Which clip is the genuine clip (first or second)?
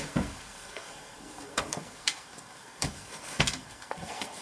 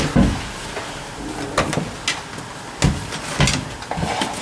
second